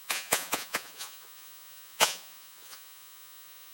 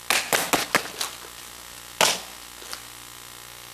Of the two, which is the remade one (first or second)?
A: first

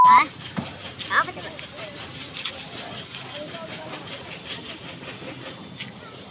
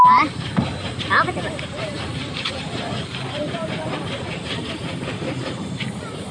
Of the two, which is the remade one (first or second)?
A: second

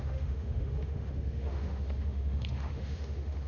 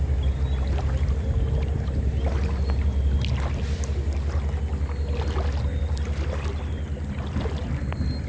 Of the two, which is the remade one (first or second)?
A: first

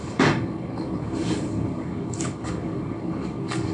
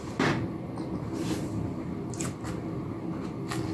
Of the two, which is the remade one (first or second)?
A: first